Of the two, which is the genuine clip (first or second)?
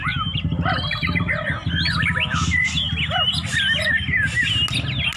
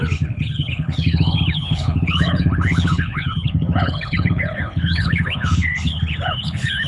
first